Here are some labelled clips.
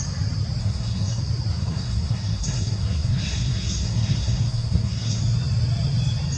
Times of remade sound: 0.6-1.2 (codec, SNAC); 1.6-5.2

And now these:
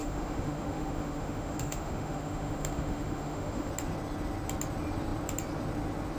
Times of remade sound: 0.0-3.7 (autoencoder, DAC-VAE)

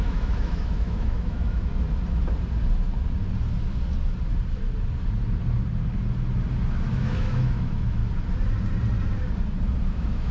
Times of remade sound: 0.0-1.7 (autoencoder, DAC-VAE); 6.9-8.0; 9.9-10.3